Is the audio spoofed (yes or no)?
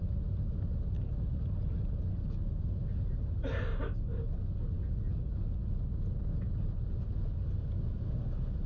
no